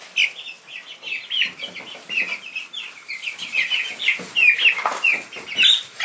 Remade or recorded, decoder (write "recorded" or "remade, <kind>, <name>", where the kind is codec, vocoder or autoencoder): recorded